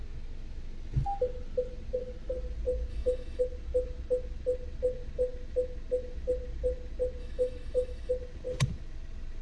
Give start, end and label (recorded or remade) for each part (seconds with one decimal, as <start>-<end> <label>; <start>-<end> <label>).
0.0-2.9 recorded; 2.9-3.4 remade; 3.4-7.2 recorded; 7.2-8.1 remade; 8.1-9.4 recorded